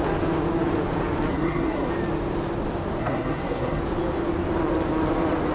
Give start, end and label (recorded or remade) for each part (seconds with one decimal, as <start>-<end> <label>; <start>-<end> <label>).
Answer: 0.0-1.3 recorded; 1.3-1.9 remade; 1.9-3.0 recorded; 3.0-3.8 remade; 3.8-5.5 recorded